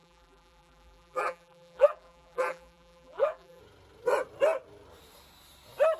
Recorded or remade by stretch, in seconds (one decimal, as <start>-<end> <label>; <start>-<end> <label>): 0.0-3.6 remade; 3.6-6.0 recorded